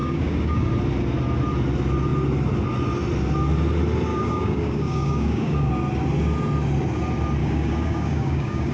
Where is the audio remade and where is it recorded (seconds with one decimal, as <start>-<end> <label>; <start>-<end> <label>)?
0.0-0.7 remade; 0.7-4.1 recorded; 4.1-5.7 remade; 5.7-7.4 recorded; 7.4-8.7 remade